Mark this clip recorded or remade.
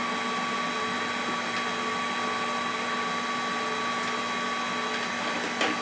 recorded